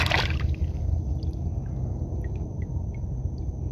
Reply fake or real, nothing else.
real